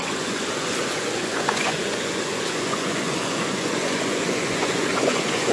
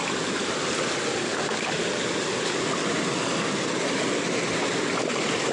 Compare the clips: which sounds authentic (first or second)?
second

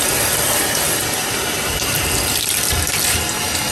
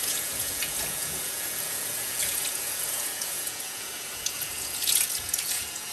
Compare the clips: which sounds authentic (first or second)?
first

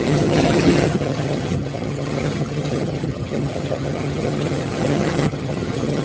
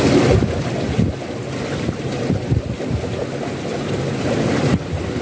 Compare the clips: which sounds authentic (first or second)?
second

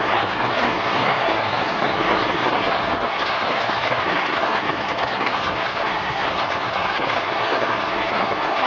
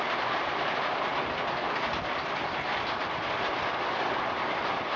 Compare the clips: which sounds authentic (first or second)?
second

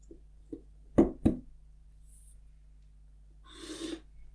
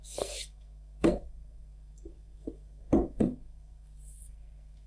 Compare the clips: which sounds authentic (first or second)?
first